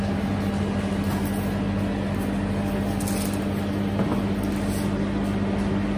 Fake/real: real